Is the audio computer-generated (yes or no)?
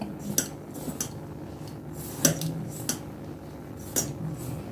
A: no